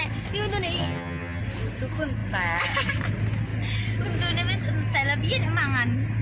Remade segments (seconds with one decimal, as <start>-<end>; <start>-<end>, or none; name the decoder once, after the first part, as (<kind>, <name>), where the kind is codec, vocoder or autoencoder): 0.8-1.4 (vocoder, HiFi-GAN)